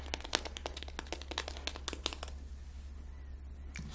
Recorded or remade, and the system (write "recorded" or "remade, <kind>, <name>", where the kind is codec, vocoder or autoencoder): recorded